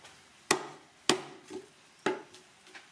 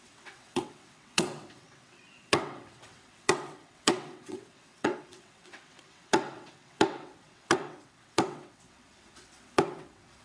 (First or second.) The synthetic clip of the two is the second